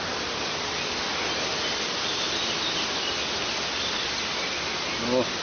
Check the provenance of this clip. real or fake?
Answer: real